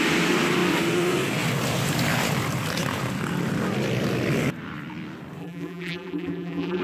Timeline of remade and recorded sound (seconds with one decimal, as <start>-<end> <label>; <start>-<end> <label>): 0.0-5.4 recorded; 5.4-6.8 remade